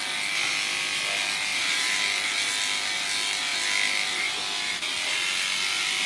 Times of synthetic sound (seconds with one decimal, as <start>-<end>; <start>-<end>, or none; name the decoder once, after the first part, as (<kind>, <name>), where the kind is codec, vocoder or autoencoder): 1.5-2.0 (vocoder, BigVGAN v2)

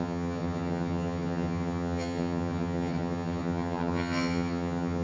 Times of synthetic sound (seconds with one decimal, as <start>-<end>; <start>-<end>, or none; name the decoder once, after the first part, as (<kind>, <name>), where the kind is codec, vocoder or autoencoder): 0.0-5.0 (vocoder, HiFi-GAN)

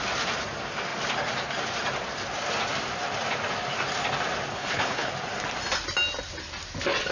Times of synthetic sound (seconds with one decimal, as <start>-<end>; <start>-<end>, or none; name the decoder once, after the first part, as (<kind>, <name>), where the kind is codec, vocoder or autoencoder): 4.5-5.1 (codec, HILCodec)

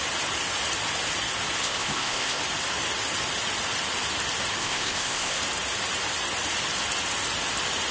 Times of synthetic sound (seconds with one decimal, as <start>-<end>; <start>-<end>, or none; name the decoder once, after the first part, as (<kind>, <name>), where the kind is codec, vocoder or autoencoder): 1.6-2.4 (codec, ZipCodec); 4.6-5.4

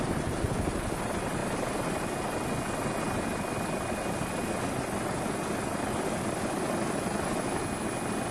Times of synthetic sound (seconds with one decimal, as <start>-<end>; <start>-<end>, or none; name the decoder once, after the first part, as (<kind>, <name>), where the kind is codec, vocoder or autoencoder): none

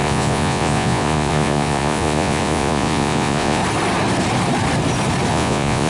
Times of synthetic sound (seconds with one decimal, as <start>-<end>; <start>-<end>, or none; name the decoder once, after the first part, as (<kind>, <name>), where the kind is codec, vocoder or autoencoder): 0.0-3.6 (vocoder, Vocos); 5.3-5.9

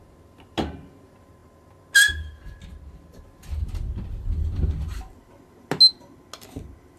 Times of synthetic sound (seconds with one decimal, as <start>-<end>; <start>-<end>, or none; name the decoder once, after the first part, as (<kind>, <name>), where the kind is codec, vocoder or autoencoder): none

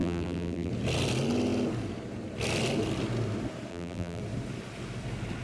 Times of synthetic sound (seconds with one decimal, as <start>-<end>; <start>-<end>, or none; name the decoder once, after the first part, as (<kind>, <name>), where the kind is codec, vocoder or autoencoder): 0.0-0.7 (vocoder, BigVGAN v2); 3.7-4.2